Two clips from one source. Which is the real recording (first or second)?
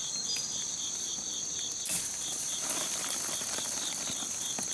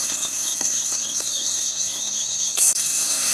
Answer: first